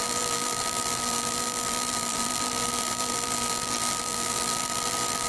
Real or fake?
fake